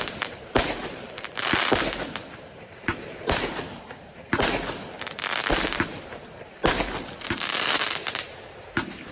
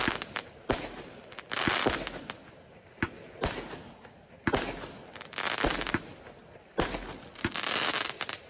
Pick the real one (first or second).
second